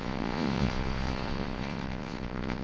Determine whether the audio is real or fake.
fake